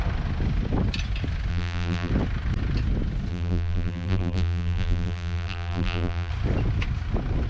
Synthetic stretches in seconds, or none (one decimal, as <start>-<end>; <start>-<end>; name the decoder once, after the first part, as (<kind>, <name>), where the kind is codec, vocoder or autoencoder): 1.5-2.1 (vocoder, BigVGAN v2); 3.3-6.3